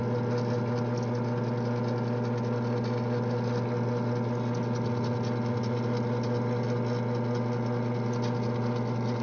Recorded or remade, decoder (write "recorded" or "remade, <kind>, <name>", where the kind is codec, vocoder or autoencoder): recorded